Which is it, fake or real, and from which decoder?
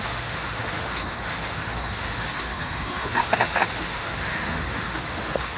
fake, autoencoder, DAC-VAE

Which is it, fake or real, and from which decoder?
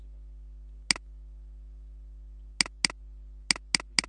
real